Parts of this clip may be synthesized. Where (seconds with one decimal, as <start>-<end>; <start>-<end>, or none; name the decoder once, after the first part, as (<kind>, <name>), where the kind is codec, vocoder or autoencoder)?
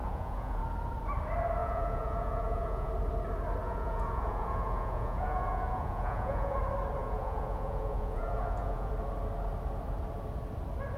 0.0-0.6 (vocoder, Vocos); 1.6-2.9; 3.6-6.6; 7.0-8.9